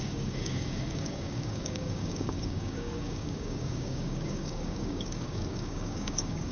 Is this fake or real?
fake